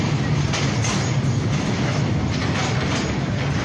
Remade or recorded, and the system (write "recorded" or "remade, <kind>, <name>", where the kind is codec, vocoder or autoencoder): recorded